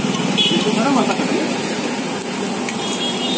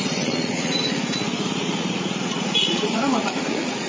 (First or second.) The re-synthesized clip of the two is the second